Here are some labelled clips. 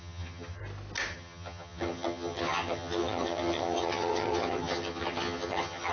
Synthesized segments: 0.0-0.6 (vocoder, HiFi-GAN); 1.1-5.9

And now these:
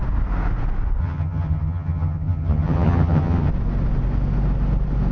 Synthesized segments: 1.0-3.5 (vocoder, HiFi-GAN)